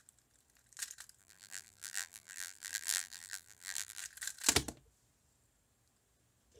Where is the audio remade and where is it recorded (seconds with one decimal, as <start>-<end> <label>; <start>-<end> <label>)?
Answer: 0.0-1.2 recorded; 1.2-4.0 remade; 4.0-6.6 recorded